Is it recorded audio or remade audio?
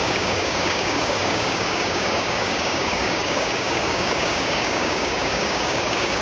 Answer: remade